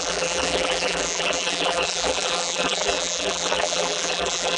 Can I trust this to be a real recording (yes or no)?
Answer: no